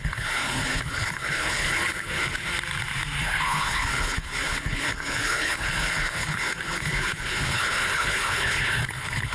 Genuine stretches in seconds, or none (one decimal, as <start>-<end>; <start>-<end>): 2.5-3.2

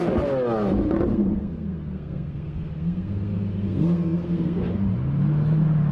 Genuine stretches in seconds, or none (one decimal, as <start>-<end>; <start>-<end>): 0.0-1.1; 4.6-5.9

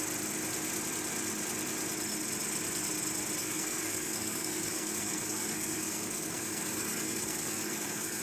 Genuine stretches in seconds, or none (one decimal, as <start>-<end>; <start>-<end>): 0.0-3.4

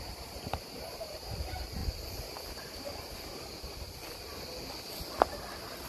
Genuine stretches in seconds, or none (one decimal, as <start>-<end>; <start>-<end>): 1.8-5.3